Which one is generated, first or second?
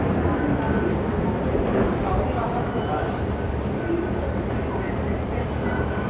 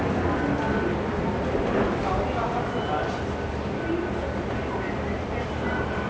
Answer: first